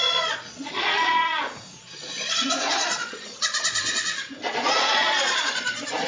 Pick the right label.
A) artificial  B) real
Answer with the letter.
A